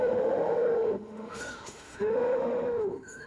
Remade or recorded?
remade